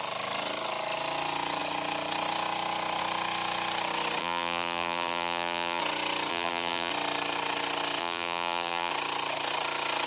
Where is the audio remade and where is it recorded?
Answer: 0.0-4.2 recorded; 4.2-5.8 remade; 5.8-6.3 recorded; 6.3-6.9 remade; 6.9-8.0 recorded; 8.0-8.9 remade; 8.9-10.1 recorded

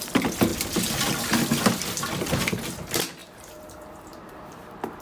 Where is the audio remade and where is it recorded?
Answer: 0.0-3.2 recorded; 3.2-4.4 remade; 4.4-5.0 recorded

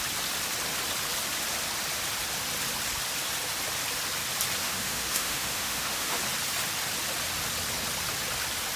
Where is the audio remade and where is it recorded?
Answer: 0.0-4.6 recorded; 4.6-6.2 remade; 6.2-8.8 recorded